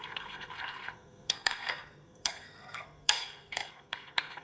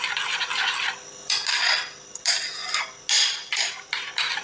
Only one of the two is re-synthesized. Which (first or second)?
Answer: first